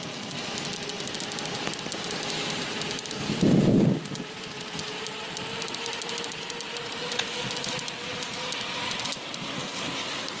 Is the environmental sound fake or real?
real